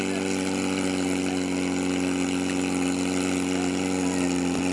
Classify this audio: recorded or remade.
recorded